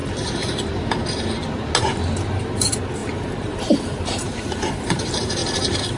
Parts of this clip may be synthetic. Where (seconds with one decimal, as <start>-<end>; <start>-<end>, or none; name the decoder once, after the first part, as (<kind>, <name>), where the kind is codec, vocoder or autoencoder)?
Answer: 2.4-5.4 (vocoder, BigVGAN v2)